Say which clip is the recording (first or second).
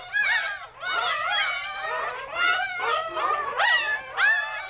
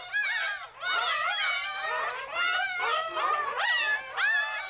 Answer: second